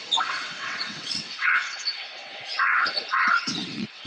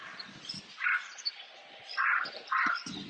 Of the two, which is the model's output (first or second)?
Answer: first